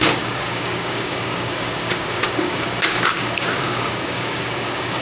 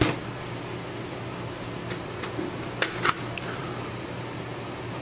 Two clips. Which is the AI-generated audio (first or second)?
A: first